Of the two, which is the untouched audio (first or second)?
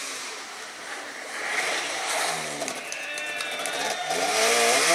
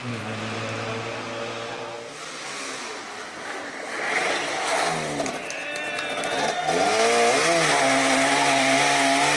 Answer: second